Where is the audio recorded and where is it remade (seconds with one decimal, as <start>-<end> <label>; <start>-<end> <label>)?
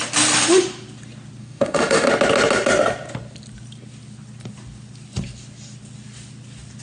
0.0-1.4 recorded; 1.4-2.1 remade; 2.1-6.8 recorded